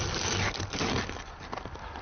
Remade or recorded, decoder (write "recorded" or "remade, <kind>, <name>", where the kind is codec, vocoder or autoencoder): recorded